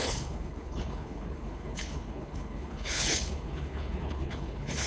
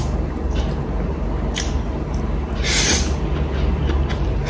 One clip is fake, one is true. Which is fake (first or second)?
first